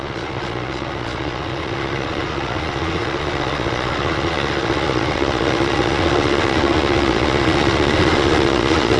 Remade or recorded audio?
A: remade